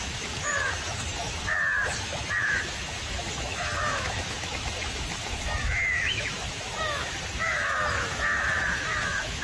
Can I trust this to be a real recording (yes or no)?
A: no